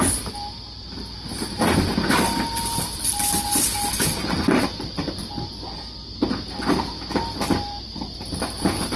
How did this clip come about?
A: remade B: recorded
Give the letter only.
A